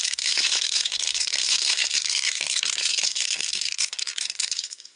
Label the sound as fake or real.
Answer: fake